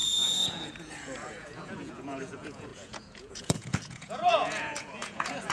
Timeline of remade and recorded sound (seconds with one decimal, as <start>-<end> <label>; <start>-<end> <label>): 0.0-5.5 remade